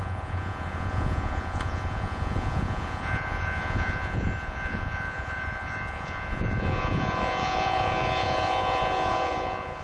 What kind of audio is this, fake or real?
fake